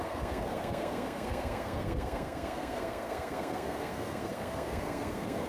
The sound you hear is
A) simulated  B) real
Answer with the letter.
A